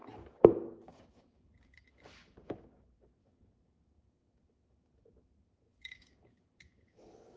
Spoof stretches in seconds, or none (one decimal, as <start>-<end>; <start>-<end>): 0.0-7.4